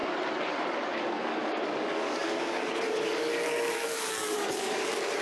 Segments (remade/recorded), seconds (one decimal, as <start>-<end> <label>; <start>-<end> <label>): 0.0-0.5 recorded; 0.5-5.2 remade